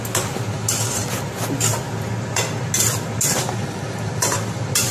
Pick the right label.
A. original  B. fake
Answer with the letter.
A